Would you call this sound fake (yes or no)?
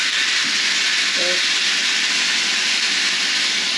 no